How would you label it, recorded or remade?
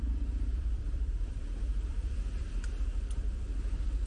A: remade